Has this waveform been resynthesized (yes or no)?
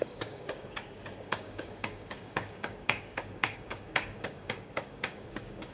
yes